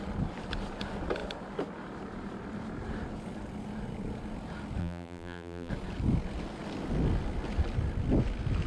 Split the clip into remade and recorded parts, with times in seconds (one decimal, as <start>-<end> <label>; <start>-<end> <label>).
0.0-4.8 recorded; 4.8-5.7 remade; 5.7-8.7 recorded